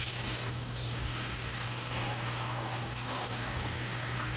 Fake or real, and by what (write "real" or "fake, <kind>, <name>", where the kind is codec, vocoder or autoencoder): fake, codec, DAC